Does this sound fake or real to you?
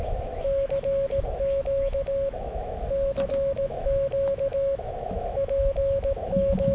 fake